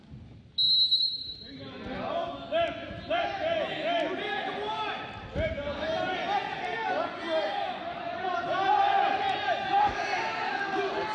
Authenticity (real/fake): real